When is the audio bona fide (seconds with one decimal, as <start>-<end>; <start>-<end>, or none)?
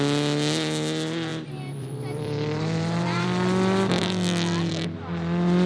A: 0.0-1.3; 4.7-5.7